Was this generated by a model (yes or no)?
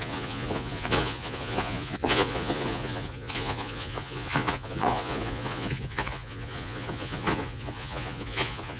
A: yes